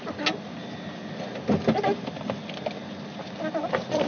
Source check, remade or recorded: recorded